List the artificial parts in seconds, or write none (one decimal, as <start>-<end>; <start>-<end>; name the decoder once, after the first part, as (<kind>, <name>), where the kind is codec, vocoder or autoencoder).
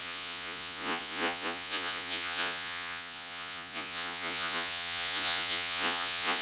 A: 0.0-6.4 (vocoder, Vocos)